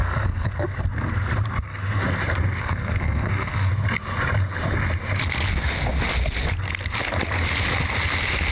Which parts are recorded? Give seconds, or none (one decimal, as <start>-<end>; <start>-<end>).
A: 0.8-2.6; 3.7-8.5